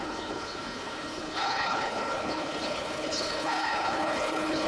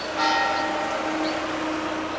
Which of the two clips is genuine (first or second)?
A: second